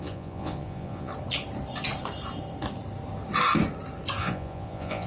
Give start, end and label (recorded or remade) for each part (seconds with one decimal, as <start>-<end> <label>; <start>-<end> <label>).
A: 0.0-1.1 remade; 1.1-4.2 recorded; 4.2-5.1 remade